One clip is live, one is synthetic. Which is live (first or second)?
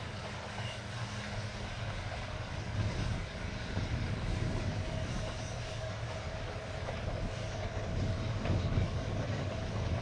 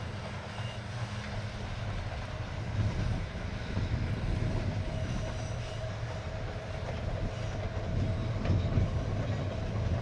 second